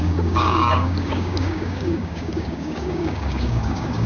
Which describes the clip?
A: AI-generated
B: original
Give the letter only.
A